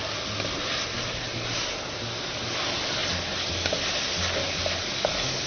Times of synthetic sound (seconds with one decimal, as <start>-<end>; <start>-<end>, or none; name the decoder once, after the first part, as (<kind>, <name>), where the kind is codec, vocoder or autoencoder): none